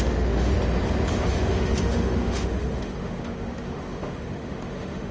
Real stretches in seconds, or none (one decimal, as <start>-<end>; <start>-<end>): 0.5-1.1